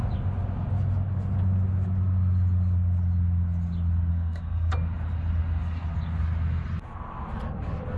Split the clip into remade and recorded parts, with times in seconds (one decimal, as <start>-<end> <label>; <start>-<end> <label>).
0.0-4.1 recorded; 4.1-4.7 remade; 4.7-8.0 recorded